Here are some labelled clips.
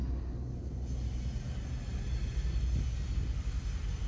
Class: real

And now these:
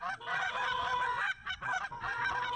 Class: fake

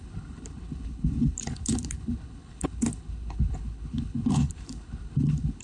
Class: fake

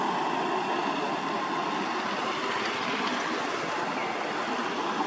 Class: real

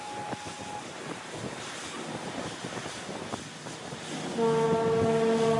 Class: real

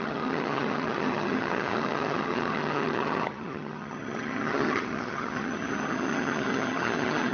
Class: fake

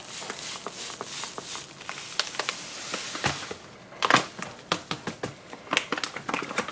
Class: real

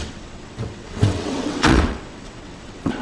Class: fake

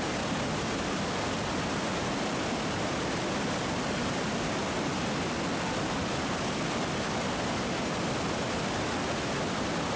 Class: real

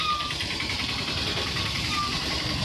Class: fake